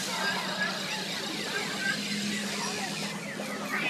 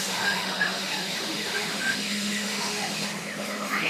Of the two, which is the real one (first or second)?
first